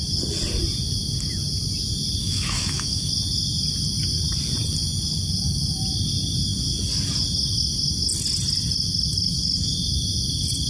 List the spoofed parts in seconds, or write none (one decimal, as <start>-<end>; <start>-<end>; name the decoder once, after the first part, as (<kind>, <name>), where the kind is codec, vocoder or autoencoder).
2.2-3.1 (autoencoder, DAC-VAE)